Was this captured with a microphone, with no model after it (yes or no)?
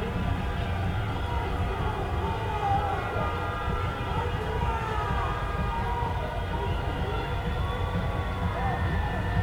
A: yes